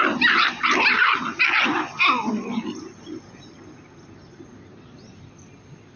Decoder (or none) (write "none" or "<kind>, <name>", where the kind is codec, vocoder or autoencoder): none